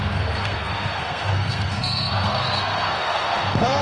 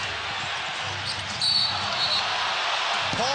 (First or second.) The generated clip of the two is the first